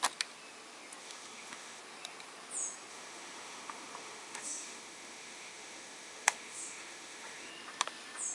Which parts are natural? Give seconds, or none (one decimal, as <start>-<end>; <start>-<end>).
0.0-1.0; 1.8-2.9; 7.5-8.3